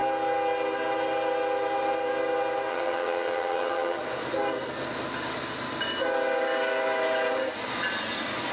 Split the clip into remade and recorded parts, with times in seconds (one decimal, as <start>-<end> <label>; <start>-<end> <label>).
0.0-2.7 recorded; 2.7-4.0 remade; 4.0-8.5 recorded